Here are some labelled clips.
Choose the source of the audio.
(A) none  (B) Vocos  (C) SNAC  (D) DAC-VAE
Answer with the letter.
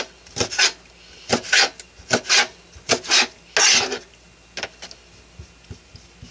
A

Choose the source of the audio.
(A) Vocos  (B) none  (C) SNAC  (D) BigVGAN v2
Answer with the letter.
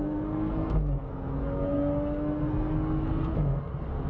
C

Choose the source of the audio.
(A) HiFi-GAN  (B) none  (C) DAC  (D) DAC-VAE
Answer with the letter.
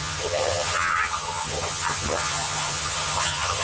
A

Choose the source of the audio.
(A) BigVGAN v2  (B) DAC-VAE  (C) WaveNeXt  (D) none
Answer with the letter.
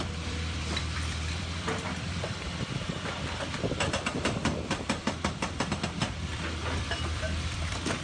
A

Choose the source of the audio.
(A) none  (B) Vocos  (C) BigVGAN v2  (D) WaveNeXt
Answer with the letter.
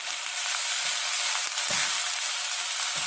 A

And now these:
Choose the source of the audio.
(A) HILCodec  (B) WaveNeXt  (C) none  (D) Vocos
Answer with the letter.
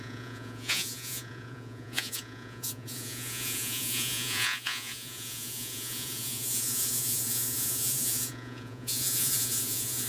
D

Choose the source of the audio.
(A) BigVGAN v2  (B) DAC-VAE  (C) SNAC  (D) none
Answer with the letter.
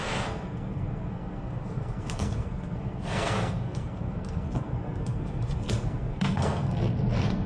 C